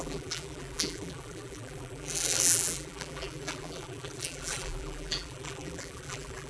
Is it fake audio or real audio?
fake